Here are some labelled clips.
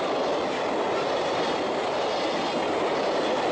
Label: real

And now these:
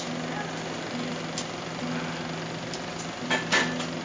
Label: real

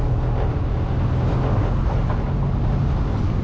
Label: real